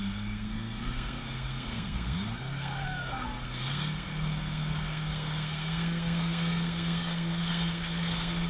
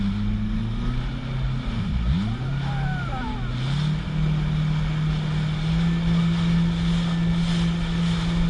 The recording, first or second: second